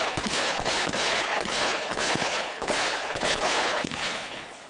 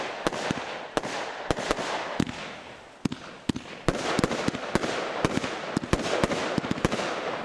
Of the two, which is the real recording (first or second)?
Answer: second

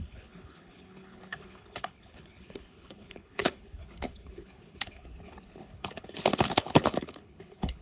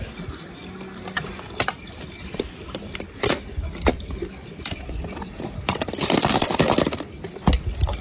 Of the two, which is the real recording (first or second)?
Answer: second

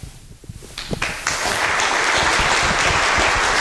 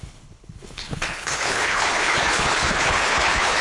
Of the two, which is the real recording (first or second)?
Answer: first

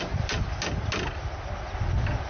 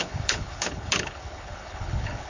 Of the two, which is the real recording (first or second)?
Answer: first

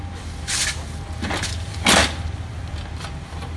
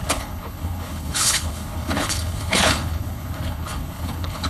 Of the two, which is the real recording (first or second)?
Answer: first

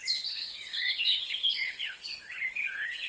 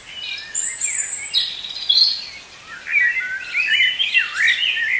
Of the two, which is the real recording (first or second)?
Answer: second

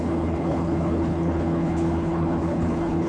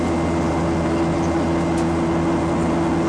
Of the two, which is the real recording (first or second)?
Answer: second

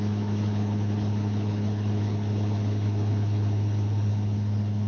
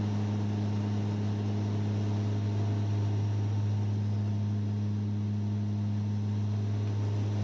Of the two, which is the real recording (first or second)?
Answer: second